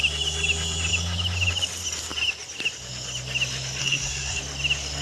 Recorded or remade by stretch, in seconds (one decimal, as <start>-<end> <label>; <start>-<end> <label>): 0.0-3.8 recorded; 3.8-4.4 remade; 4.4-5.0 recorded